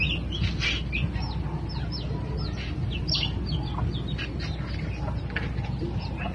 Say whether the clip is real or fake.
real